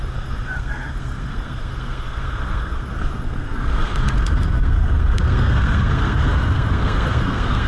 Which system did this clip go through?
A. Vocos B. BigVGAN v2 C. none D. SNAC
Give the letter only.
D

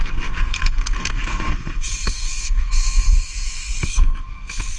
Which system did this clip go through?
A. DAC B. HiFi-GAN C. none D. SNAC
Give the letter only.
D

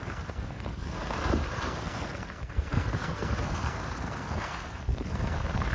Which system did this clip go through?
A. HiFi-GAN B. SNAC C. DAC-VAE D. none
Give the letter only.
B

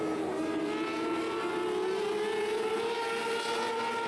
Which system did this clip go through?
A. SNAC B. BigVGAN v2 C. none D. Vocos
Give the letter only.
C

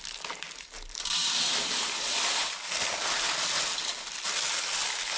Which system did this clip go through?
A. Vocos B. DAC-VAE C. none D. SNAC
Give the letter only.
C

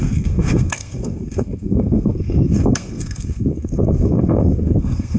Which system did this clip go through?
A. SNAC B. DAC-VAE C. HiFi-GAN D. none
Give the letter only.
A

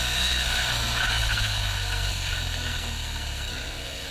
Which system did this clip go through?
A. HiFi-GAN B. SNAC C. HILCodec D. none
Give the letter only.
B